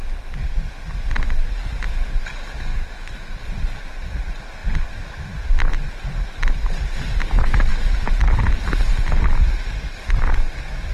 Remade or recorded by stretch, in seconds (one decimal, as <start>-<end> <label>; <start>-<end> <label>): 0.0-2.7 recorded; 2.7-3.3 remade; 3.3-10.9 recorded